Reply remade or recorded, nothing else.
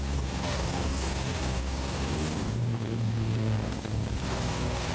remade